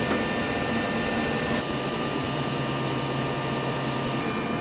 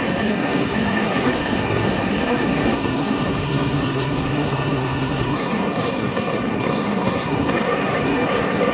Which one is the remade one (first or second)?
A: second